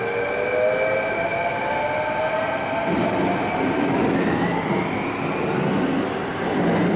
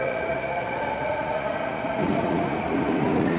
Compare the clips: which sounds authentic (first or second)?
first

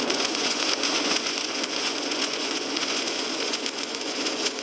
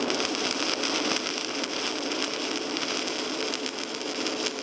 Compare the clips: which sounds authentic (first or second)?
second